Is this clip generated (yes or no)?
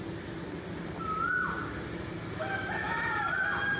no